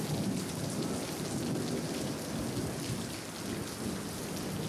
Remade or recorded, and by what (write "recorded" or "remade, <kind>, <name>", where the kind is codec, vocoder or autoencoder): recorded